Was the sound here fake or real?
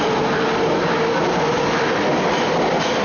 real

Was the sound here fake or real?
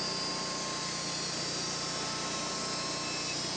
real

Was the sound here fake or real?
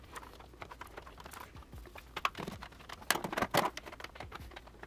real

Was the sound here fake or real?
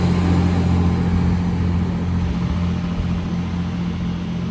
real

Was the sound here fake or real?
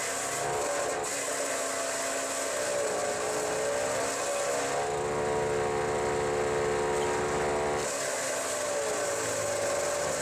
real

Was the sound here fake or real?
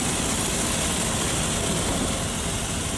real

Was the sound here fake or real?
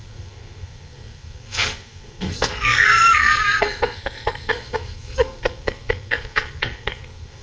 fake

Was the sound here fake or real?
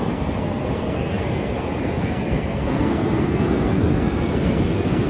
fake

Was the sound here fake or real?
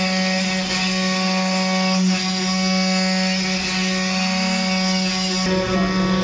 real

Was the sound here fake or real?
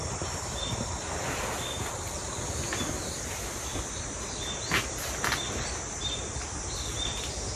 real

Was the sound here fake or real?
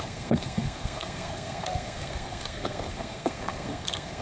fake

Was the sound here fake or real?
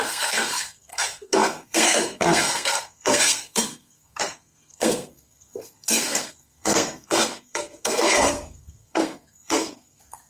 fake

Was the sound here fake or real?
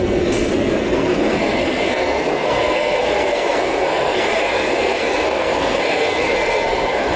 fake